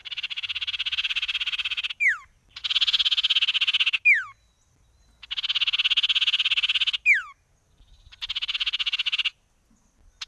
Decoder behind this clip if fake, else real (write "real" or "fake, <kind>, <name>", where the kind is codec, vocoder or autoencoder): real